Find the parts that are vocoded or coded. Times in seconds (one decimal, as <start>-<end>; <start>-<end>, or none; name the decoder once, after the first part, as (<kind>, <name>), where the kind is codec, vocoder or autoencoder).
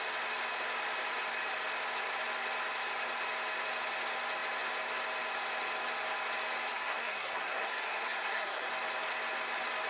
6.7-8.7 (codec, SNAC)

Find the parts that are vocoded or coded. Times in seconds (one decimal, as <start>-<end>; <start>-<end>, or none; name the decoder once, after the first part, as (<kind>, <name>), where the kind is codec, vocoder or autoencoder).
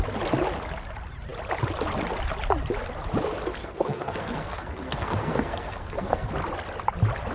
3.6-6.3 (codec, SNAC)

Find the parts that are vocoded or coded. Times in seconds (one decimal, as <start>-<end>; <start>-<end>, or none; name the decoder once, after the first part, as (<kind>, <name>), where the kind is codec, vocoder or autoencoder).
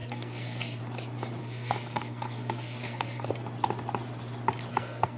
0.0-0.8 (codec, SNAC); 1.4-3.3; 4.7-5.2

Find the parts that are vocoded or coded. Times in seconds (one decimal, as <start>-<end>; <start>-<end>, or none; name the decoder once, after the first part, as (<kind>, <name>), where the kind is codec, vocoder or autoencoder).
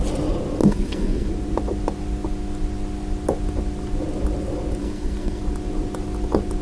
0.6-1.3 (codec, SNAC); 4.8-5.4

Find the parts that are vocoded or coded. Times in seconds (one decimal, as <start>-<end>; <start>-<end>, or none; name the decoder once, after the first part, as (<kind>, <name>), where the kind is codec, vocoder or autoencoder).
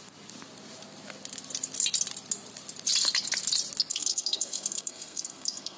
3.9-5.8 (codec, SNAC)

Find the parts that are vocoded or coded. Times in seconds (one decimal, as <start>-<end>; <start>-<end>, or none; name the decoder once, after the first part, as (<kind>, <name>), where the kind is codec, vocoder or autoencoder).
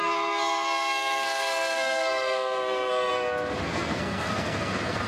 0.0-3.1 (codec, SNAC); 3.6-5.1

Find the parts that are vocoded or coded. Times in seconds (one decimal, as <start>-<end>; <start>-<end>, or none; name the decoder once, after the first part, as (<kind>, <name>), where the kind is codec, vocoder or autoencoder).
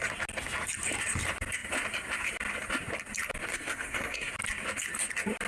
3.5-4.3 (codec, SNAC)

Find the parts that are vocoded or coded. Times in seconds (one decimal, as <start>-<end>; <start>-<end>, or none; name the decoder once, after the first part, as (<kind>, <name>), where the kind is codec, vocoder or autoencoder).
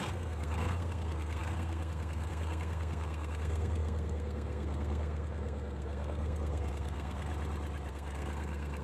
0.0-7.3 (codec, SNAC); 7.9-8.8